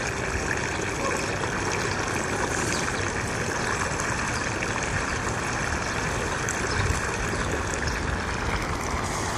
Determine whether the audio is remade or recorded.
recorded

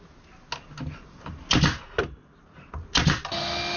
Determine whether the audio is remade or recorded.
recorded